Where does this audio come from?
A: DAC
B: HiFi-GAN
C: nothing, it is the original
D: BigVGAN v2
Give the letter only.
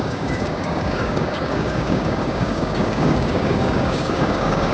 A